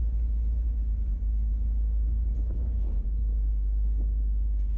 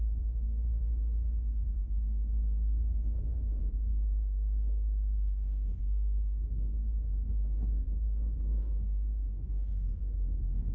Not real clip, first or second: second